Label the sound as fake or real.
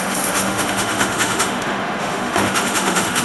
fake